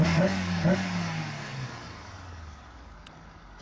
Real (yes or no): no